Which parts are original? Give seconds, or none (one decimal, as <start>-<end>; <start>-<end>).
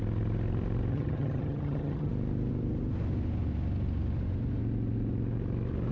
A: 0.0-0.9; 2.1-5.9